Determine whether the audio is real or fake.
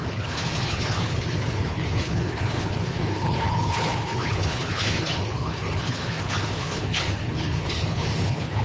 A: fake